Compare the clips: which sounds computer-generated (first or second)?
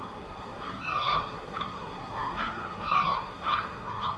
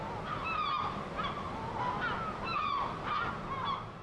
first